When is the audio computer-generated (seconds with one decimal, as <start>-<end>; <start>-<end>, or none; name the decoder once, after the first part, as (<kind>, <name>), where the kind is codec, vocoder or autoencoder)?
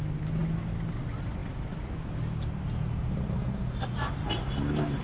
none